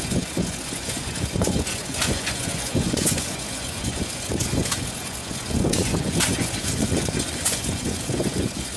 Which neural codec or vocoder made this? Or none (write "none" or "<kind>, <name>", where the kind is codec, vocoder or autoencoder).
vocoder, Vocos